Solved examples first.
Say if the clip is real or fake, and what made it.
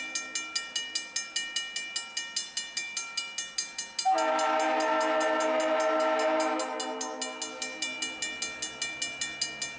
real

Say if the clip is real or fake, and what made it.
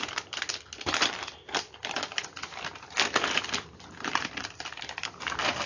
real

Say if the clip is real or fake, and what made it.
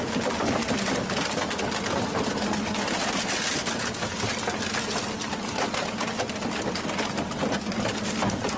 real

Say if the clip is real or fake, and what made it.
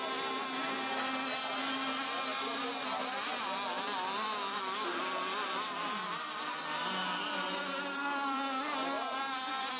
real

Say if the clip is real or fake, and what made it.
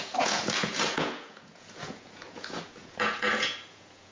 fake, vocoder, Vocos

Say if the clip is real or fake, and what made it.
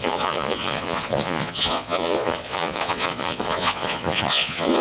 fake, vocoder, Vocos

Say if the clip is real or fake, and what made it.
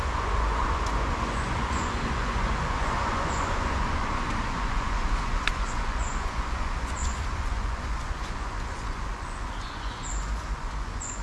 fake, vocoder, Vocos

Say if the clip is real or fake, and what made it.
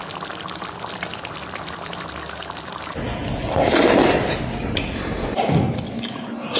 real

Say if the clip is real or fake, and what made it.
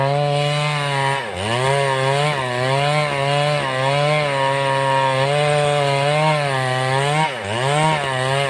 real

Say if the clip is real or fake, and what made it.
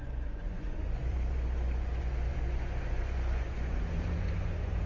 fake, vocoder, Vocos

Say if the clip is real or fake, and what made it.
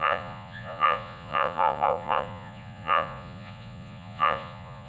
fake, vocoder, Vocos